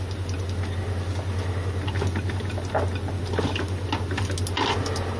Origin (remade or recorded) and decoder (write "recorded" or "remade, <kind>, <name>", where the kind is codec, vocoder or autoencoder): recorded